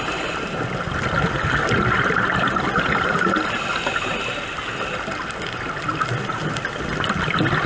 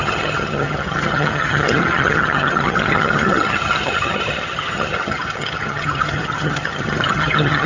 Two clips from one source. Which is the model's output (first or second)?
second